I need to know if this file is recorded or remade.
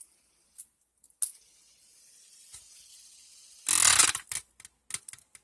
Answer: recorded